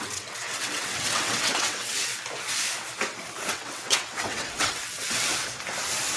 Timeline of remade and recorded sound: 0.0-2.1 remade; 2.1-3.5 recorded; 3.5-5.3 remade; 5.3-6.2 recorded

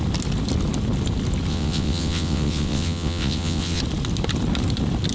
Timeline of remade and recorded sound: 0.0-1.5 recorded; 1.5-3.8 remade; 3.8-5.1 recorded

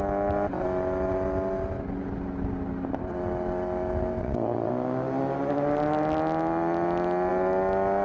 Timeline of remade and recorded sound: 0.0-4.2 recorded; 4.2-4.7 remade; 4.7-8.0 recorded

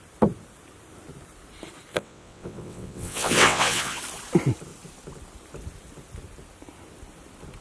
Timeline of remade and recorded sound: 0.0-1.9 recorded; 1.9-4.0 remade; 4.0-7.6 recorded

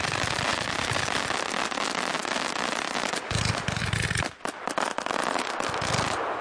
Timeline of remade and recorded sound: 0.0-6.4 recorded

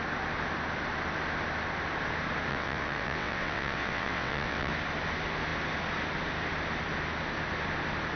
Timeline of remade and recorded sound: 0.0-2.5 recorded; 2.5-4.7 remade; 4.7-8.2 recorded